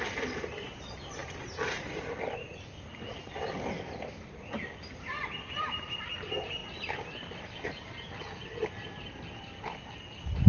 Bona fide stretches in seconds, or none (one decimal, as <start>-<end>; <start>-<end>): 0.0-10.5